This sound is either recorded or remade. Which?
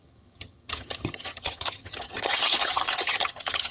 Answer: remade